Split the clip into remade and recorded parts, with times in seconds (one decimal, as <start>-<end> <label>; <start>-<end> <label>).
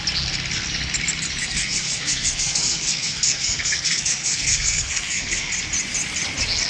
0.0-1.5 recorded; 1.5-5.5 remade; 5.5-6.7 recorded